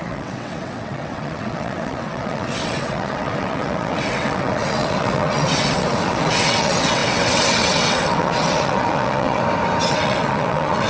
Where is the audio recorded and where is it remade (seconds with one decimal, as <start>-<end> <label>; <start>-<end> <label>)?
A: 0.0-9.4 remade; 9.4-9.9 recorded; 9.9-10.9 remade